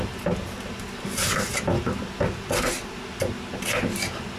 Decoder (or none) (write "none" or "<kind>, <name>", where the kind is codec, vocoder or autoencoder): none